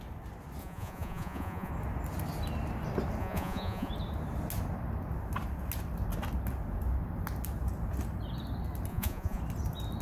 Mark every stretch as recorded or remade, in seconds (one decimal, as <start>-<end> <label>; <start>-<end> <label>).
0.0-0.6 recorded; 0.6-1.7 remade; 1.7-3.2 recorded; 3.2-3.9 remade; 3.9-8.9 recorded; 8.9-9.4 remade; 9.4-10.0 recorded